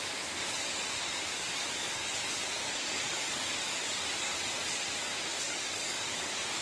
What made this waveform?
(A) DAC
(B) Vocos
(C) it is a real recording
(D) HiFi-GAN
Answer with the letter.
A